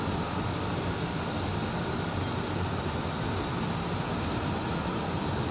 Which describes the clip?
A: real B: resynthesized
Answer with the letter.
A